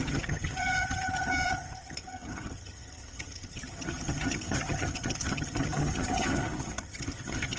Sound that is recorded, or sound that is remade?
remade